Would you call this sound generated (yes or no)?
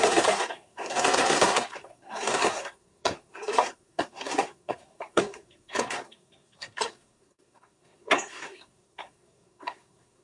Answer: yes